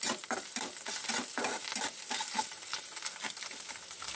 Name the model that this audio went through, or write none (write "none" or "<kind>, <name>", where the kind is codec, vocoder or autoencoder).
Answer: none